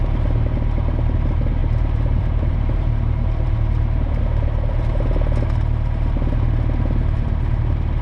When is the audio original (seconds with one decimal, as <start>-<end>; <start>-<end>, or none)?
0.0-1.6; 4.2-8.0